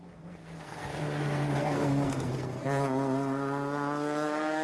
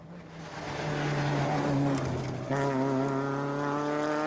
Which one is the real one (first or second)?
second